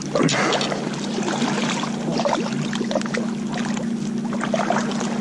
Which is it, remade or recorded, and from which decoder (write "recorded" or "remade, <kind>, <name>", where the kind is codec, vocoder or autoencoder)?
recorded